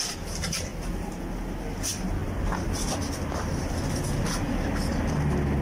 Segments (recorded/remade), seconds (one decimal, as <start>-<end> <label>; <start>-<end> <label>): 0.0-5.6 recorded